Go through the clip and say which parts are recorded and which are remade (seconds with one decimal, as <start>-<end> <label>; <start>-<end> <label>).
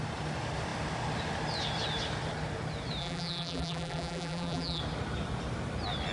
0.0-3.0 recorded; 3.0-4.8 remade; 4.8-6.1 recorded